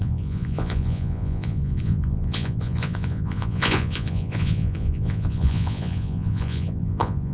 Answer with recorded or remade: remade